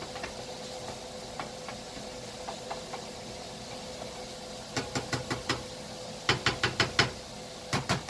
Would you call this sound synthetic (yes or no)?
no